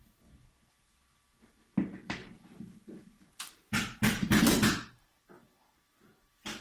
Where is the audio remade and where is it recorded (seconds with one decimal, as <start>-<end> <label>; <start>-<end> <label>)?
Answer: 0.0-2.2 recorded; 2.2-5.3 remade; 5.3-6.6 recorded